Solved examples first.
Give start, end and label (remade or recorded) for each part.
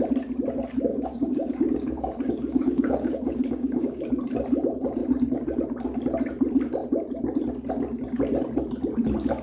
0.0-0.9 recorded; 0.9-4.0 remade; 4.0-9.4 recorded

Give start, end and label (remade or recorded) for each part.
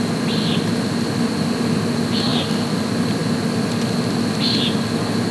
0.0-5.3 recorded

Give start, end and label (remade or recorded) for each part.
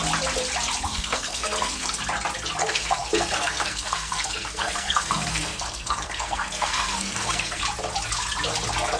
0.0-0.9 recorded; 0.9-2.0 remade; 2.0-2.6 recorded; 2.6-7.6 remade; 7.6-9.0 recorded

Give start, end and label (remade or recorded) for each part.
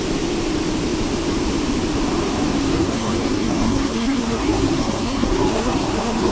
0.0-2.6 recorded; 2.6-6.3 remade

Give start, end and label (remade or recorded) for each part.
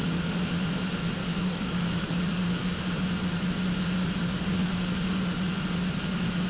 0.0-1.2 recorded; 1.2-2.1 remade; 2.1-4.6 recorded; 4.6-5.2 remade; 5.2-6.5 recorded